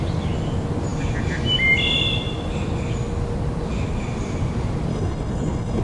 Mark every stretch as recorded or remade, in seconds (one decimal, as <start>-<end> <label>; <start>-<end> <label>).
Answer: 0.0-4.9 recorded; 4.9-5.8 remade